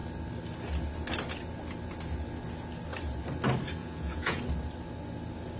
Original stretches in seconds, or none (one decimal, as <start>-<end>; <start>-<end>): 0.0-3.8; 4.4-5.6